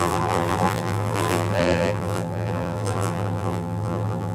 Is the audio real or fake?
fake